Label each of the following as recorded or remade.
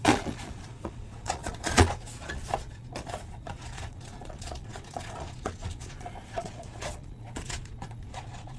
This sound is remade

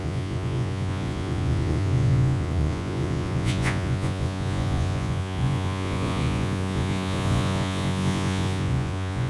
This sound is remade